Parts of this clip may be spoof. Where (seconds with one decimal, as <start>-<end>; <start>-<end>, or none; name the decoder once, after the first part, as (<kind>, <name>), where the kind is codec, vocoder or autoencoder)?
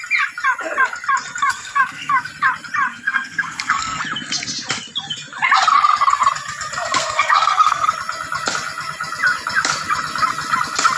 1.4-2.3 (codec, SNAC); 2.9-4.0; 7.0-7.9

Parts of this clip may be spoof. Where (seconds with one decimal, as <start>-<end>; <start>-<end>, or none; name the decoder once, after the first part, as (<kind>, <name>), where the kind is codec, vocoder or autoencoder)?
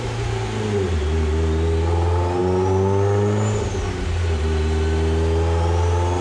none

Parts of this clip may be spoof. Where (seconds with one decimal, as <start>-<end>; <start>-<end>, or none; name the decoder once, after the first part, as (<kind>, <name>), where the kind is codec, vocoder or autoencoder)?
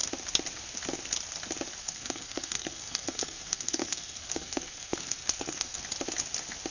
1.8-5.8 (codec, SNAC)